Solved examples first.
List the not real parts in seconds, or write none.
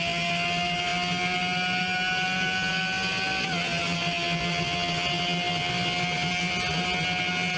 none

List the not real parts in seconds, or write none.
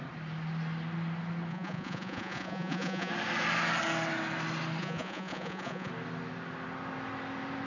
1.5-3.1 (vocoder, Vocos); 4.8-5.9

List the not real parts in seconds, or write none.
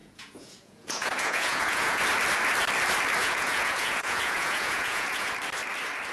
0.0-2.0 (vocoder, Vocos); 3.2-5.3